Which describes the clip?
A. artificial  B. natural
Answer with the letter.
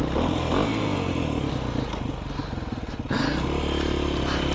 B